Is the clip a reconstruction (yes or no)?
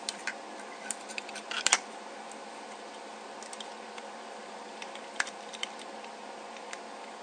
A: yes